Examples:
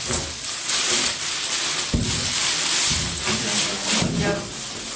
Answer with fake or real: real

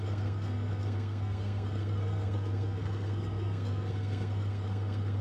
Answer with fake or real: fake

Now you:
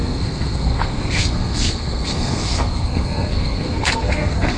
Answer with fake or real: fake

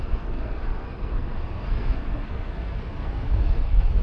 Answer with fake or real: fake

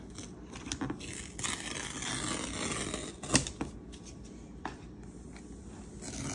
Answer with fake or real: real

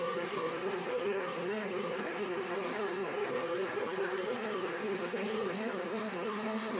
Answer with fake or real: fake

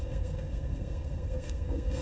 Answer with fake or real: fake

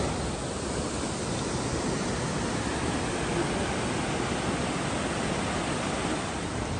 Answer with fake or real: real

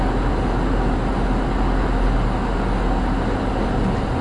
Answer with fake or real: real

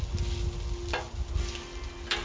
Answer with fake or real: real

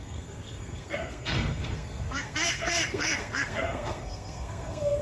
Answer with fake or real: fake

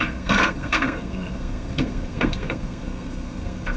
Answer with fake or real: fake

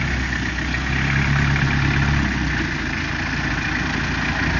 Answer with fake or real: real